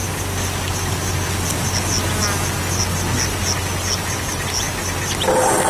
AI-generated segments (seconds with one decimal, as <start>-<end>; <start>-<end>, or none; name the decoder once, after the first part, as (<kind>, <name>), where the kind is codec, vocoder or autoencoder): none